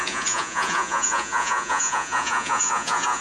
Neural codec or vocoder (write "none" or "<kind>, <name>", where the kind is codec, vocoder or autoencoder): vocoder, Vocos